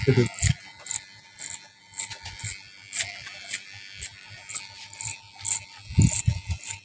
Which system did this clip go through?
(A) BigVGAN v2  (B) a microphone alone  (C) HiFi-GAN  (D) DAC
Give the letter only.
B